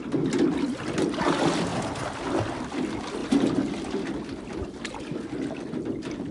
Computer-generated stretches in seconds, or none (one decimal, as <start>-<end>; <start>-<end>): none